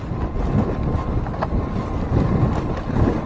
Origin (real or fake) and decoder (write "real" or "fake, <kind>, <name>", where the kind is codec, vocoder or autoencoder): real